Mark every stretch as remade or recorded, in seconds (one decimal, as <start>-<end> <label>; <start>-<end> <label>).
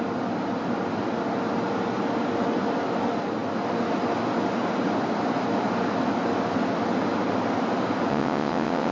0.0-8.1 recorded; 8.1-8.9 remade